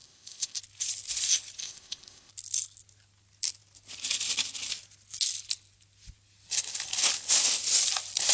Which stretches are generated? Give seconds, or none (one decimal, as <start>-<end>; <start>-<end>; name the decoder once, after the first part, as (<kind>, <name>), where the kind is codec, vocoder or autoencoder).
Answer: 0.0-0.6 (codec, ZipCodec); 1.6-2.3